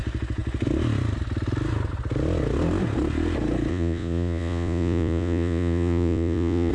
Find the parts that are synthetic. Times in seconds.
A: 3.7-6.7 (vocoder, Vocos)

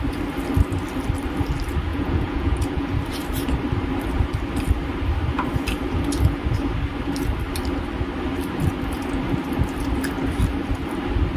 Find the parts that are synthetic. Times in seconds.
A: 1.9-3.0 (vocoder, Vocos)

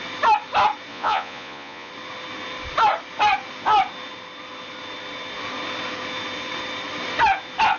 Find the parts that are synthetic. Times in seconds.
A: 0.9-1.9 (vocoder, Vocos)

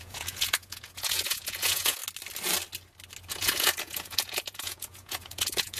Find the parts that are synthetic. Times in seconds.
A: 0.0-2.0 (vocoder, Vocos); 3.3-5.8

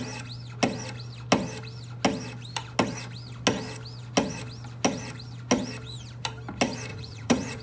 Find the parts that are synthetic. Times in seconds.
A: 6.9-7.6 (vocoder, Vocos)

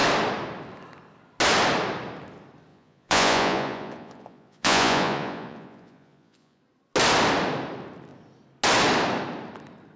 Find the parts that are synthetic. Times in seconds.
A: 2.7-6.6 (vocoder, Vocos)

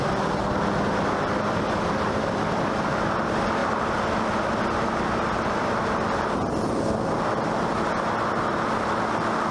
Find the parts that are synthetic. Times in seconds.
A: none

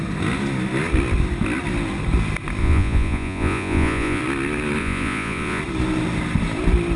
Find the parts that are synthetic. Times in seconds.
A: 2.6-4.2 (vocoder, Vocos); 4.8-5.6